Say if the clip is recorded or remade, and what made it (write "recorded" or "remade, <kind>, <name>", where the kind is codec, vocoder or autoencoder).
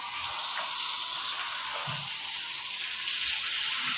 recorded